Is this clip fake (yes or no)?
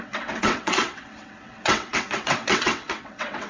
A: yes